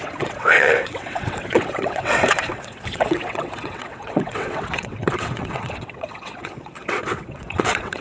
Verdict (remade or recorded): remade